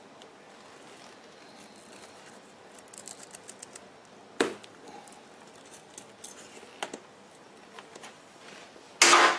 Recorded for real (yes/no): yes